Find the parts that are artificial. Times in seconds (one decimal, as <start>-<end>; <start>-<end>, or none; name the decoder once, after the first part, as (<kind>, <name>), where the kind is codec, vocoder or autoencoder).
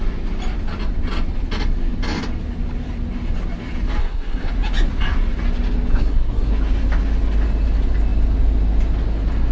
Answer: 4.0-4.5 (codec, SNAC); 5.9-6.5